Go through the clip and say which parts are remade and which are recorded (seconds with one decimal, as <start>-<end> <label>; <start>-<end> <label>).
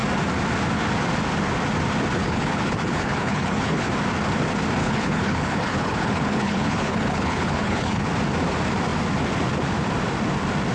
0.0-2.2 recorded; 2.2-3.9 remade; 3.9-4.8 recorded; 4.8-8.1 remade; 8.1-10.7 recorded